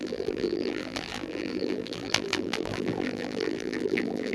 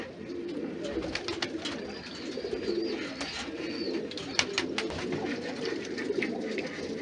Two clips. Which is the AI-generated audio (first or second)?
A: first